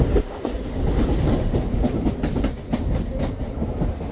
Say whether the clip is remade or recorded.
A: recorded